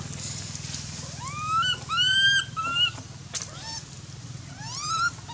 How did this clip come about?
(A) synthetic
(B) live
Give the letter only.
B